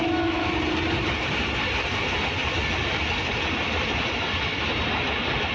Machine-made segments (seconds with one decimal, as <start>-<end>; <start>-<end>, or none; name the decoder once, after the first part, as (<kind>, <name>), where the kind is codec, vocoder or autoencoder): 0.0-0.5 (autoencoder, DAC-VAE)